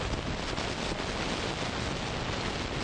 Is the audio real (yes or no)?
yes